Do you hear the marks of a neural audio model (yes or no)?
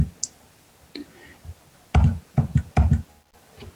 no